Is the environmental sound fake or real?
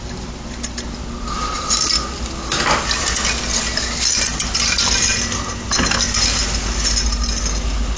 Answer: real